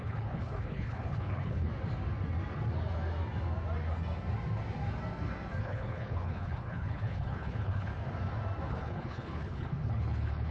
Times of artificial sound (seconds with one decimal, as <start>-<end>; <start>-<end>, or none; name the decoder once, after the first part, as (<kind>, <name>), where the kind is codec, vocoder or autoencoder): 0.0-1.7 (codec, HILCodec); 5.6-7.9; 8.7-10.5